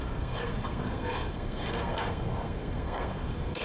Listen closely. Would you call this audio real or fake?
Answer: fake